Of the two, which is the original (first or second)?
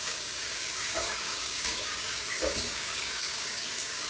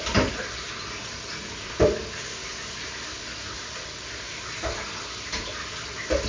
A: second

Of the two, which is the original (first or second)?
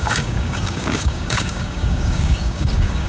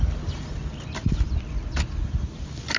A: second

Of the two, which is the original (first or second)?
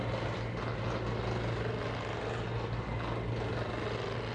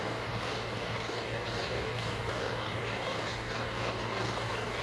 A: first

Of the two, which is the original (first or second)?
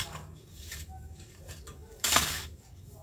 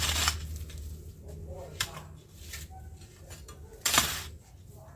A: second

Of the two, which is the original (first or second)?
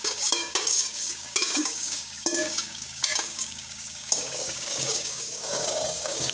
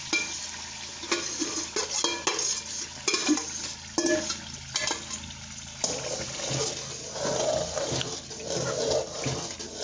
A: second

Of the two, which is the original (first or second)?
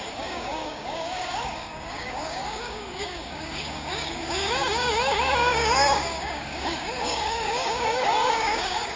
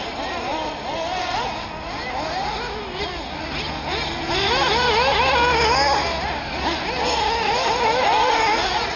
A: second